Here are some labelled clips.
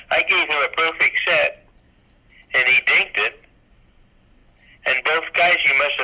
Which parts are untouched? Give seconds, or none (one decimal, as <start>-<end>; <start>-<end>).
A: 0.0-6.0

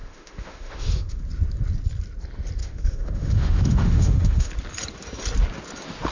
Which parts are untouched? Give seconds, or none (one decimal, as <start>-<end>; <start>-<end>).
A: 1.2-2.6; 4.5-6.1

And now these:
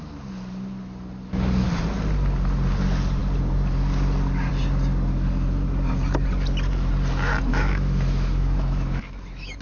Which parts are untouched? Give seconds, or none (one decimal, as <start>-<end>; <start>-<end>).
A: 0.0-7.5